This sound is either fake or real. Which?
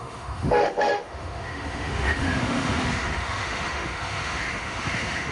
fake